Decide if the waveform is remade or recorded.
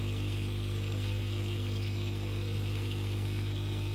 remade